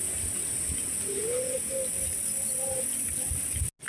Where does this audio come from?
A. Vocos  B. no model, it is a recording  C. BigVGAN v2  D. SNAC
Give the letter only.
B